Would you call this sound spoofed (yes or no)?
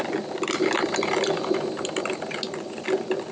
no